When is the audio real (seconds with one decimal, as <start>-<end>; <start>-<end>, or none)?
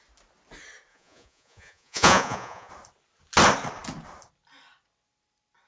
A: 0.0-0.9; 2.7-5.7